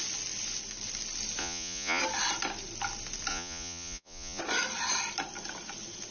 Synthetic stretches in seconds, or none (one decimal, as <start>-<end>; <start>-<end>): 1.4-2.0; 3.3-4.4